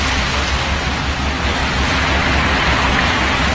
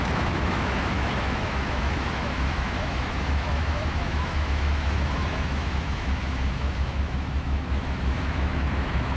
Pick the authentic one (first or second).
first